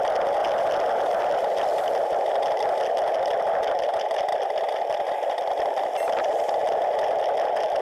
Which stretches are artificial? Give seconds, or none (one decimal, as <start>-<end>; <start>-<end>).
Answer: none